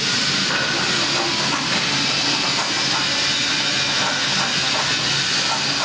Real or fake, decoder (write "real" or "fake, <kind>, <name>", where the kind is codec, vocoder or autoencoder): real